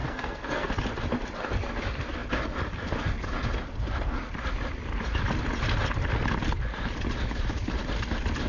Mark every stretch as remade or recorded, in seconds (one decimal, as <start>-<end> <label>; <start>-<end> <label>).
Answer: 0.0-0.7 remade; 0.7-8.5 recorded